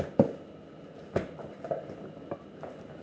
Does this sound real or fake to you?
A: real